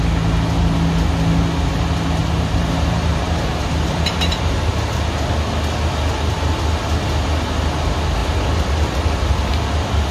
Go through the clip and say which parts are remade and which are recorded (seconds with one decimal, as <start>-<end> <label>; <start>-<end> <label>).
0.0-2.2 recorded; 2.2-4.7 remade; 4.7-10.1 recorded